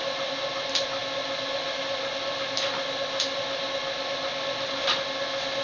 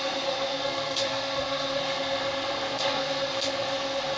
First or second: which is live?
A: first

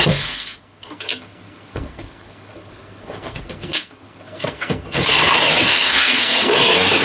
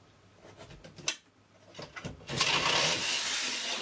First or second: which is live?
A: second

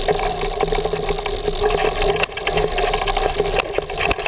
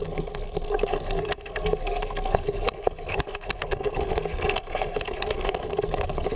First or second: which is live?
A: first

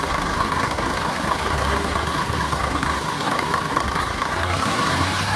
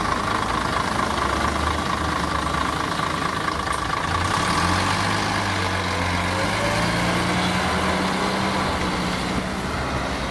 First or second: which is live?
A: second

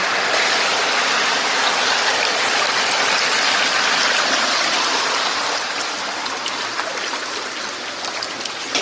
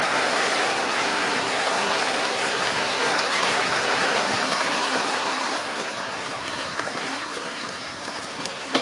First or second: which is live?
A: first